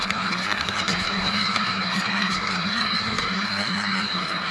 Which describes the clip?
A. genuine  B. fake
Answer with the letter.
B